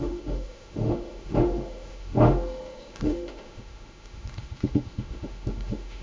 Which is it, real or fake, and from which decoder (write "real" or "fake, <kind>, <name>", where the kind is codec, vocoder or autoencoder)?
fake, autoencoder, DAC-VAE